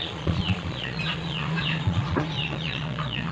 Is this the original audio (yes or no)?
no